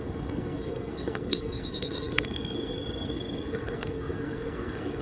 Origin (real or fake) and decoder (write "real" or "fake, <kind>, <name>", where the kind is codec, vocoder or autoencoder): fake, codec, SNAC